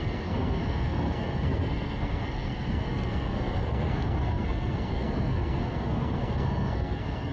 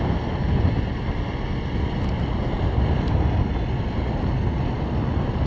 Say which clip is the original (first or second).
second